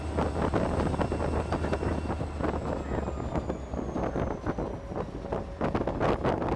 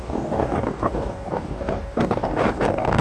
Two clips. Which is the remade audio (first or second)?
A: second